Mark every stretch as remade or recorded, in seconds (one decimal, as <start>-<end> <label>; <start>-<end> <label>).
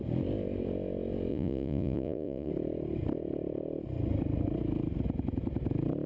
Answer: 0.0-1.3 recorded; 1.3-2.5 remade; 2.5-6.1 recorded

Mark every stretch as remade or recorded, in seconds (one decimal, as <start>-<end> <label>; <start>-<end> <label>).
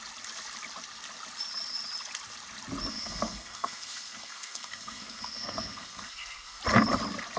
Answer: 0.0-2.9 recorded; 2.9-6.6 remade; 6.6-7.4 recorded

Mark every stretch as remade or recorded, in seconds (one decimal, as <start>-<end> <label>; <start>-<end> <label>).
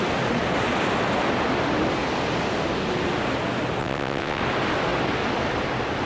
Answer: 0.0-3.8 recorded; 3.8-4.4 remade; 4.4-6.1 recorded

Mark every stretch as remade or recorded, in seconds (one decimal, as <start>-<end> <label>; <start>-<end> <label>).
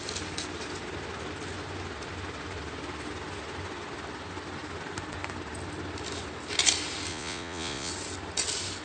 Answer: 0.0-7.1 recorded; 7.1-7.9 remade; 7.9-8.8 recorded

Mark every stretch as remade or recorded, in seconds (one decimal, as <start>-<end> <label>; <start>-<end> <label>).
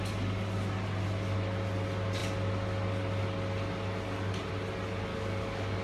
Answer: 0.0-5.1 recorded; 5.1-5.8 remade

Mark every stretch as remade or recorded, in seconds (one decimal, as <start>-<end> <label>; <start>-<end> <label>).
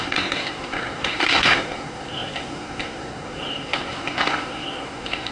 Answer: 0.0-5.3 remade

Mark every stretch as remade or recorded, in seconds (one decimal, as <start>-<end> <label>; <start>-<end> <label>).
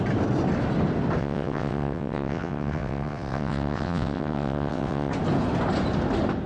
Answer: 0.0-1.2 recorded; 1.2-5.1 remade; 5.1-6.5 recorded